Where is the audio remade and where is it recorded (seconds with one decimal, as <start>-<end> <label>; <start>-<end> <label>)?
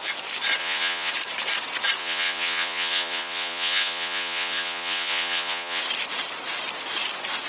0.0-0.6 recorded; 0.6-1.1 remade; 1.1-2.0 recorded; 2.0-5.8 remade; 5.8-7.5 recorded